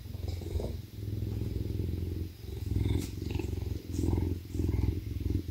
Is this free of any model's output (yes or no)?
yes